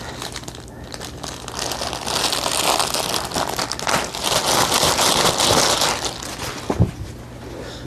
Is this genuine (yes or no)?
yes